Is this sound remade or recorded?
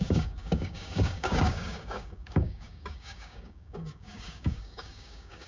remade